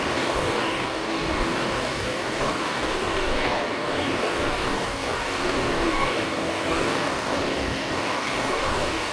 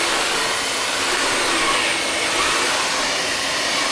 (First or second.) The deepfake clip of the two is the first